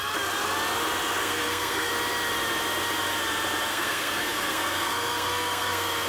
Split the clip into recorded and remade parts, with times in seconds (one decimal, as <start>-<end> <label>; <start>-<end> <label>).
0.0-1.2 recorded; 1.2-1.9 remade; 1.9-3.7 recorded; 3.7-6.1 remade